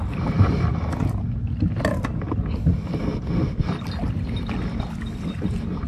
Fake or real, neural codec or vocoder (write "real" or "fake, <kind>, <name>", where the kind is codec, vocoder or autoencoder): real